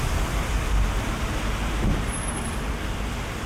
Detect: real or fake real